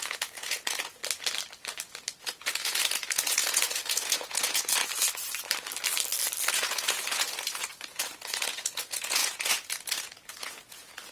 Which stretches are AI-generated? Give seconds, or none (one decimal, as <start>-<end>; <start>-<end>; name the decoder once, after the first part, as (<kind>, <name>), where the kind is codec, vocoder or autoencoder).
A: 0.0-1.0 (vocoder, Vocos); 2.2-4.8; 6.5-11.1